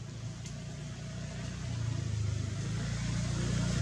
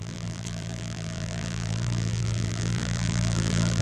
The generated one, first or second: second